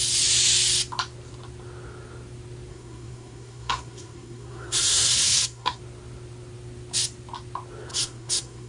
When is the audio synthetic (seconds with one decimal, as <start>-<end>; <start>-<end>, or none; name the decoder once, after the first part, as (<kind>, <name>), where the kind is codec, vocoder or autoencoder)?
2.7-5.8 (codec, SNAC); 7.9-8.7